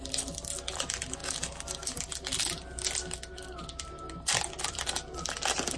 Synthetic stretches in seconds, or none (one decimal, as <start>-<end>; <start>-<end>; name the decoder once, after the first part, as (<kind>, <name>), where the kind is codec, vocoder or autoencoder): none